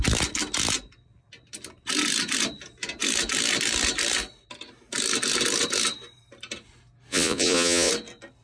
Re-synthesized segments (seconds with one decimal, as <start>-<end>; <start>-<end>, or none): 7.1-7.9